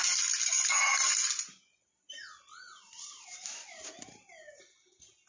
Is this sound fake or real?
real